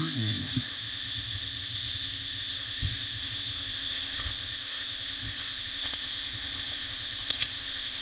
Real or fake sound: fake